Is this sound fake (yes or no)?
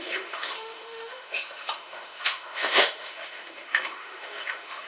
yes